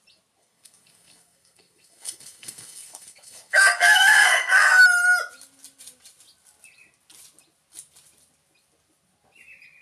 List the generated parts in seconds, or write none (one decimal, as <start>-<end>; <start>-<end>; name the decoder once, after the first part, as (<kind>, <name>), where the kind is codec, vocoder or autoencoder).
0.4-4.8 (codec, SNAC)